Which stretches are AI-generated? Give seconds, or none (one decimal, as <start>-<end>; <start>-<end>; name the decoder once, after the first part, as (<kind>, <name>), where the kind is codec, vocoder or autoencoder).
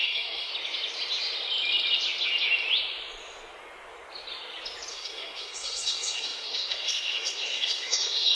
0.0-0.5 (codec, SNAC); 4.9-8.3